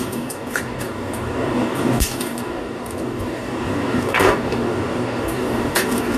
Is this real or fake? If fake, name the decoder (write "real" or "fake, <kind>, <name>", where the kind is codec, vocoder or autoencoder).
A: fake, codec, DAC